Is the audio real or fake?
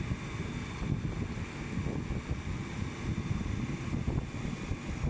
real